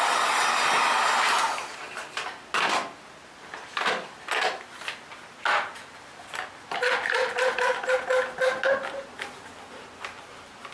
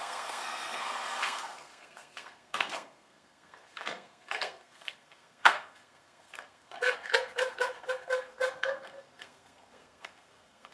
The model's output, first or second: second